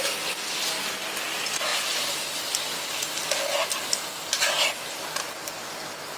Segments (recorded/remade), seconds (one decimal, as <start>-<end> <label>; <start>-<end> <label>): 0.0-6.2 recorded